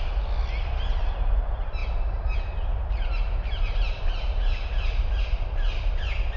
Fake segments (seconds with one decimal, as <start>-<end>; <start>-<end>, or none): none